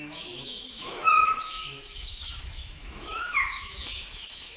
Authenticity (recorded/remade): remade